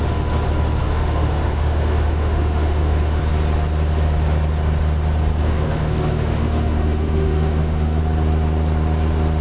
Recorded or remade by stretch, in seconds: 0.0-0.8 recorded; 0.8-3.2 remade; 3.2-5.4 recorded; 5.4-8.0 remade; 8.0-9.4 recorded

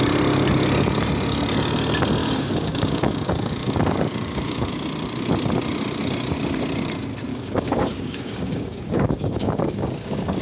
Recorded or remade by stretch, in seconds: 0.0-2.2 recorded; 2.2-4.7 remade; 4.7-7.3 recorded; 7.3-10.4 remade

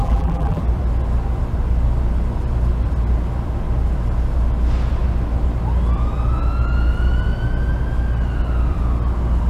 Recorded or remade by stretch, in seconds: 0.0-0.6 remade; 0.6-9.5 recorded

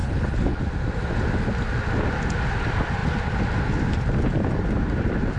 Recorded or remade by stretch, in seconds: 0.0-0.6 remade; 0.6-5.4 recorded

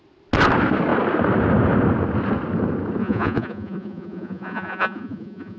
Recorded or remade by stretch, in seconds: 0.0-3.0 recorded; 3.0-5.6 remade

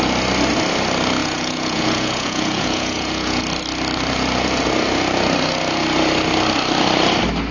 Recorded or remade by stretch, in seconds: 0.0-1.2 recorded; 1.2-3.4 remade; 3.4-7.5 recorded

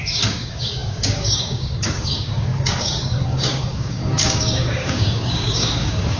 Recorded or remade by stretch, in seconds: 0.0-6.2 remade

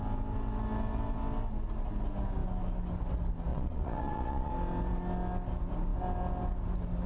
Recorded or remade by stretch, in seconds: 0.0-3.5 recorded; 3.5-4.5 remade; 4.5-7.1 recorded